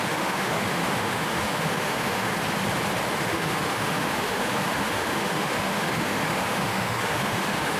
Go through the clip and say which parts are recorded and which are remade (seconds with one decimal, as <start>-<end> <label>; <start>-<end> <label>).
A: 0.0-2.3 remade; 2.3-3.2 recorded; 3.2-7.8 remade